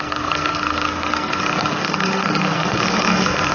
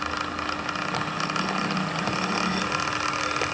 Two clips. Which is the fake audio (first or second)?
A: first